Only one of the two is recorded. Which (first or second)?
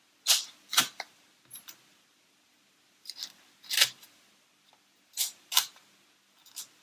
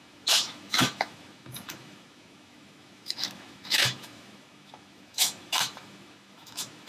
first